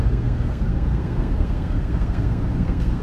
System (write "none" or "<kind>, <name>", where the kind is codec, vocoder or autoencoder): codec, SNAC